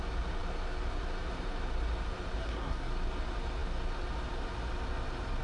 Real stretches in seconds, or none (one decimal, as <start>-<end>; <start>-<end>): 0.0-2.4; 2.9-5.4